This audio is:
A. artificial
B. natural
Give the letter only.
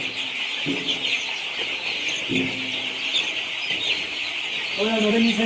B